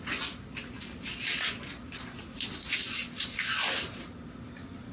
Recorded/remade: recorded